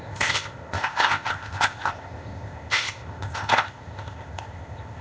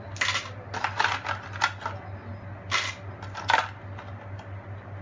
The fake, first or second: first